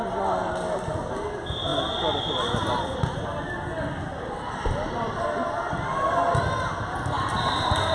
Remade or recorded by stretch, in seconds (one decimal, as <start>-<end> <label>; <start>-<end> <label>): 0.0-7.9 recorded